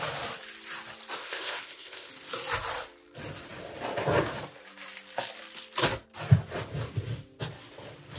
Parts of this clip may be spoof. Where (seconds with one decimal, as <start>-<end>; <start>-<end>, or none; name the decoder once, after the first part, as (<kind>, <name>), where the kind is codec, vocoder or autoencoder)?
1.2-2.1 (codec, ZipCodec)